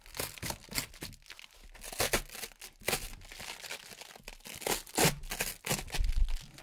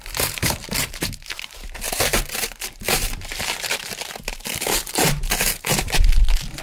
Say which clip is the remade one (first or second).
second